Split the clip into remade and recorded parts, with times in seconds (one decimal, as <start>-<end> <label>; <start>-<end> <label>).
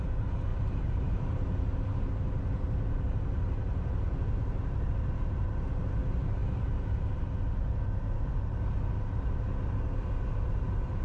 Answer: 0.0-11.0 recorded